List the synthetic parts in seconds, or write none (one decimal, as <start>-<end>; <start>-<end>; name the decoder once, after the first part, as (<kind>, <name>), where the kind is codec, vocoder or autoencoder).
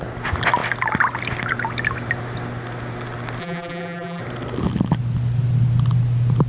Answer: 3.4-4.2 (vocoder, BigVGAN v2)